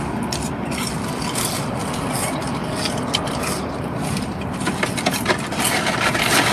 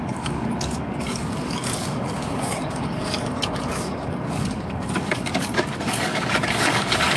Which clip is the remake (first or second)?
second